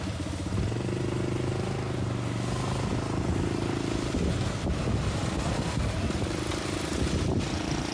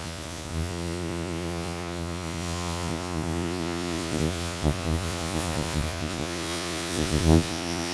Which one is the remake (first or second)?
second